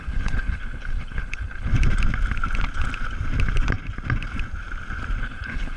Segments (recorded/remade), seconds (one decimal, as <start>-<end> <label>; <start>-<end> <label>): 0.0-1.7 remade; 1.7-5.2 recorded; 5.2-5.8 remade